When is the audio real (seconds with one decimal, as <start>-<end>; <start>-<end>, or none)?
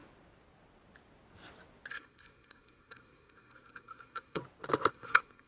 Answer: 0.0-1.9; 4.4-4.9